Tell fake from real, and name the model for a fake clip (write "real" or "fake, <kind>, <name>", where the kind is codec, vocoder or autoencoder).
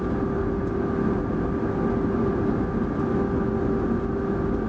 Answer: real